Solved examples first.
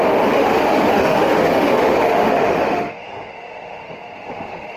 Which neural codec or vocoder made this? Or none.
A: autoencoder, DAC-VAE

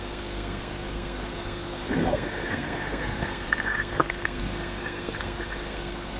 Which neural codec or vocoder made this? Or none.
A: codec, SNAC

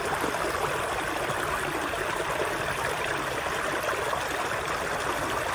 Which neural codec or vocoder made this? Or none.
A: none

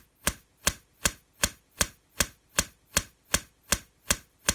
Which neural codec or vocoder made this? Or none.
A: none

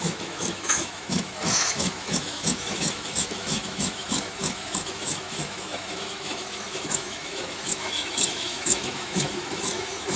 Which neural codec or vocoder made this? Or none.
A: autoencoder, DAC-VAE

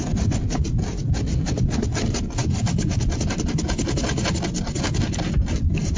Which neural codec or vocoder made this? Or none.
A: none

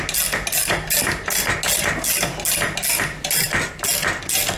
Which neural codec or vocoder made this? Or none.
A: none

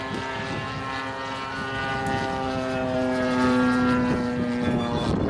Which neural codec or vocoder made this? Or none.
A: none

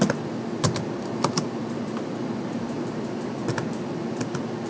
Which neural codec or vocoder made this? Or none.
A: none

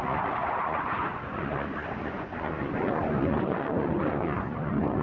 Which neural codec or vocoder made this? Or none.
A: vocoder, Vocos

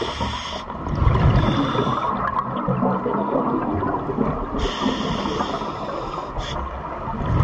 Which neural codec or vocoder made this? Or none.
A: none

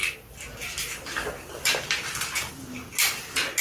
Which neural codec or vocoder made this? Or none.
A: none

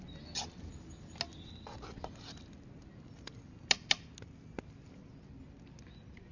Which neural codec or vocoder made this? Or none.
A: none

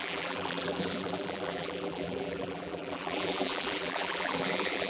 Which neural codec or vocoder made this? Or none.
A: vocoder, BigVGAN v2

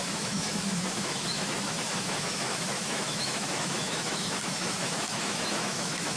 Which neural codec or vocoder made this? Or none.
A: autoencoder, DAC-VAE